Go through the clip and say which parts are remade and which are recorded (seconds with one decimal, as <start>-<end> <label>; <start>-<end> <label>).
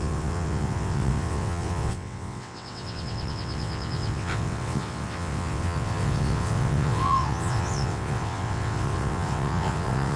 0.0-10.2 remade